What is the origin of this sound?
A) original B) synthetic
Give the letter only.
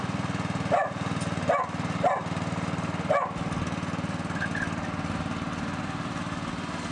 A